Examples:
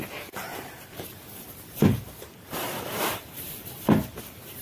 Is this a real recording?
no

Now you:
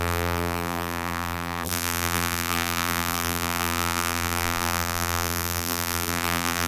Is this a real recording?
no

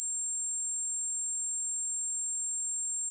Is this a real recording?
yes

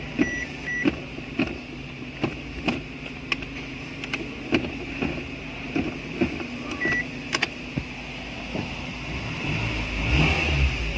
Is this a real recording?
yes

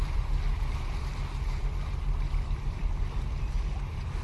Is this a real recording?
no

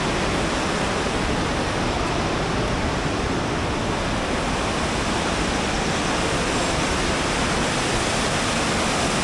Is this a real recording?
yes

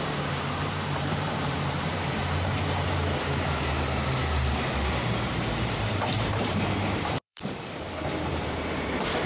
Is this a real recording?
no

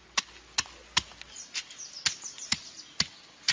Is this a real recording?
yes